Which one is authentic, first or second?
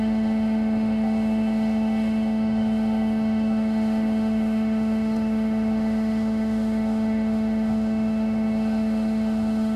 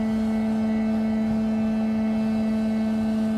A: second